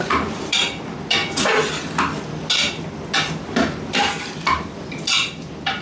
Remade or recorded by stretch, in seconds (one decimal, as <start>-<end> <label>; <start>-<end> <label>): 0.0-1.2 remade; 1.2-3.4 recorded; 3.4-5.8 remade